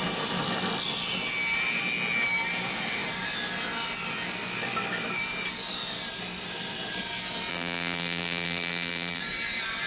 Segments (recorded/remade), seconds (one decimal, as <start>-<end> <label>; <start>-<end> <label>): 0.0-7.5 recorded; 7.5-9.2 remade; 9.2-9.9 recorded